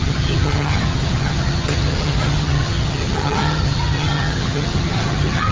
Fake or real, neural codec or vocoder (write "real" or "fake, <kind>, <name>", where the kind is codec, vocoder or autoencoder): fake, vocoder, HiFi-GAN